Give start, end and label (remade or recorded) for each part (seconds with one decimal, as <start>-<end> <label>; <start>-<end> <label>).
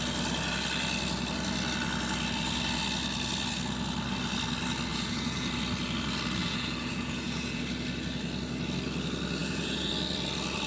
0.0-4.9 recorded; 4.9-5.5 remade; 5.5-6.4 recorded; 6.4-7.6 remade; 7.6-9.4 recorded; 9.4-9.9 remade; 9.9-10.7 recorded